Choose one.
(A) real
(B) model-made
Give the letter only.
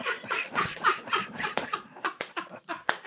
B